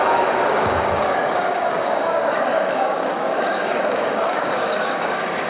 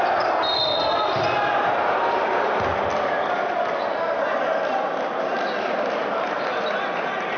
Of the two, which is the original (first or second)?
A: second